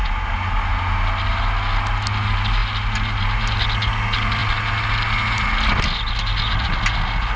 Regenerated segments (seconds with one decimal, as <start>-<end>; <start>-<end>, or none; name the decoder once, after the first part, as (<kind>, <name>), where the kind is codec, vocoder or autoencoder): none